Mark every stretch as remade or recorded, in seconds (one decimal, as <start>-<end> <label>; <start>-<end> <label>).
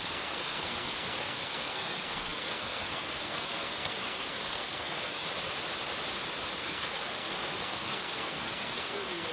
0.0-5.2 remade; 5.2-6.6 recorded; 6.6-9.3 remade